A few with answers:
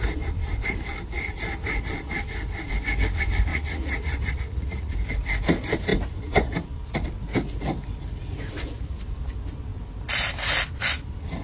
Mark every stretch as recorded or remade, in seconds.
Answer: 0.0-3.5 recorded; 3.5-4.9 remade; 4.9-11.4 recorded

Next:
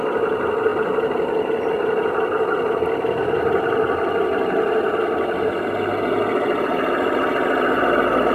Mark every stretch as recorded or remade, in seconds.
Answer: 0.0-8.3 recorded

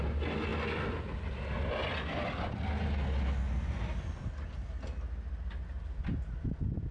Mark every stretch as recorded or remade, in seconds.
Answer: 0.0-6.9 recorded

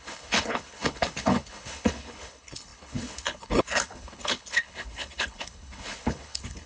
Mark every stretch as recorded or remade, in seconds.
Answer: 0.0-6.7 remade

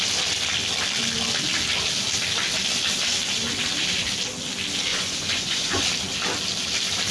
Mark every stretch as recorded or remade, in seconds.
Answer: 0.0-4.9 recorded; 4.9-5.8 remade; 5.8-7.1 recorded

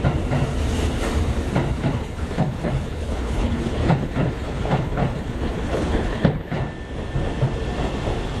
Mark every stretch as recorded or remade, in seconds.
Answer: 0.0-1.7 recorded; 1.7-6.6 remade; 6.6-8.4 recorded